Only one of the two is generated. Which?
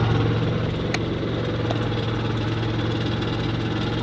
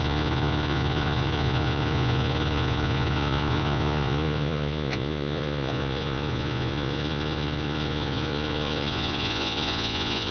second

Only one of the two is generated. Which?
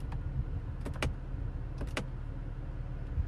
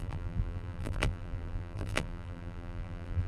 second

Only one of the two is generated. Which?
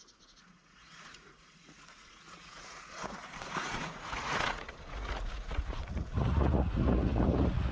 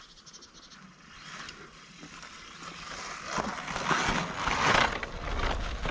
first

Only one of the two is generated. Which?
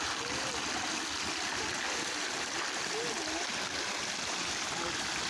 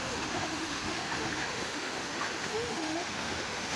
second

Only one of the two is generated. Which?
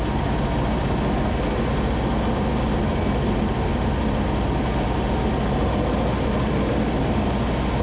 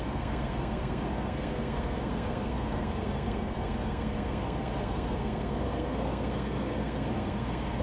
second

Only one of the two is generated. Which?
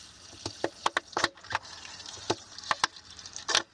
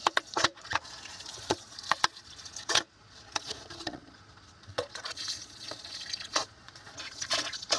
second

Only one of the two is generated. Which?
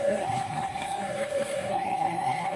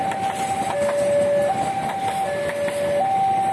first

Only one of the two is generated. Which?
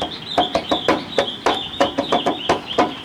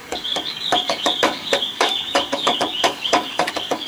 second